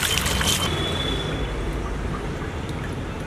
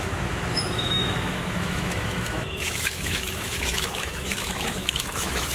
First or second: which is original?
first